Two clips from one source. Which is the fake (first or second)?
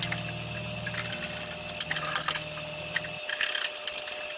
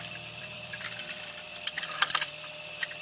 second